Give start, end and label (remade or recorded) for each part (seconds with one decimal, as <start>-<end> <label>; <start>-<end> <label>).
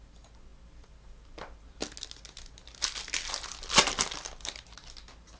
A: 0.0-5.4 recorded